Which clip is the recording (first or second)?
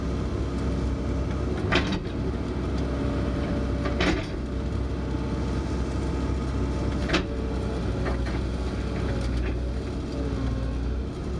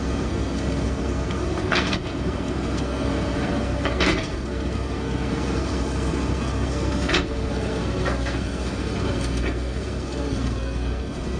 first